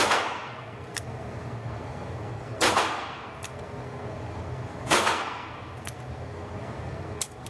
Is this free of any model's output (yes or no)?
no